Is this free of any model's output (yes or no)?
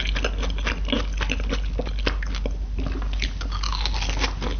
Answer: yes